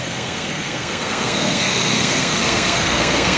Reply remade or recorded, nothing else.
remade